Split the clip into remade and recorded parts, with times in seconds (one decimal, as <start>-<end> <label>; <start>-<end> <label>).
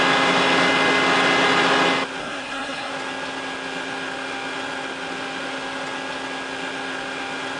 0.0-2.2 recorded; 2.2-2.9 remade; 2.9-7.6 recorded